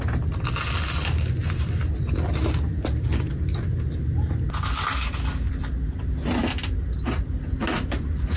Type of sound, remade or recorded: recorded